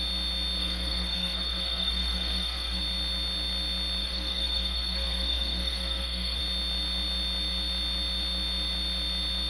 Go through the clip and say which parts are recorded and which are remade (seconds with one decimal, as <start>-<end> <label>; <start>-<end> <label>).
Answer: 0.0-0.6 recorded; 0.6-2.8 remade; 2.8-4.0 recorded; 4.0-6.4 remade; 6.4-9.5 recorded